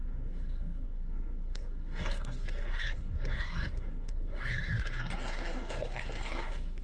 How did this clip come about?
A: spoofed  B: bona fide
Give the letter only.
A